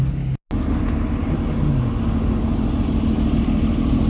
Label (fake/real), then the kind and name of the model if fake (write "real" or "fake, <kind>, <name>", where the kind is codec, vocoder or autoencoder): real